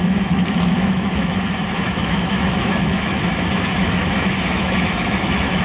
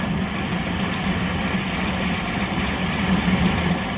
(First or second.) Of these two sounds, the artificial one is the first